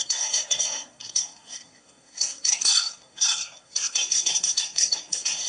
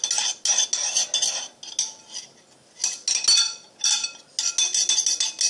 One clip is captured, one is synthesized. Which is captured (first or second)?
second